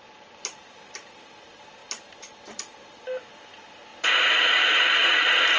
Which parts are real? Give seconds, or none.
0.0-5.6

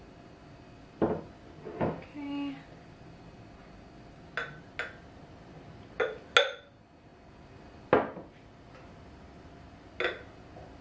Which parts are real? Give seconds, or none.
0.0-10.8

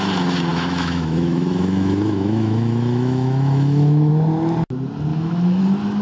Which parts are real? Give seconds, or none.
0.0-0.5; 4.1-5.1; 5.6-6.0